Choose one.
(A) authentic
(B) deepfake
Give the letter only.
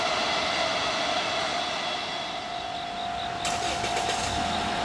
A